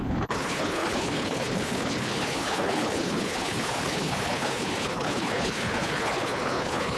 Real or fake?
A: fake